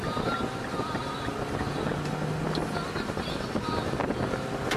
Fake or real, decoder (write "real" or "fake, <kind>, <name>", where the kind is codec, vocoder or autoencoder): real